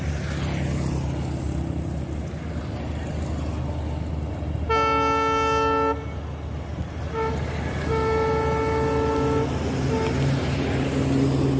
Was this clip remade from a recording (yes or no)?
no